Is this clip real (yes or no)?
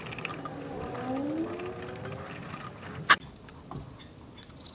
yes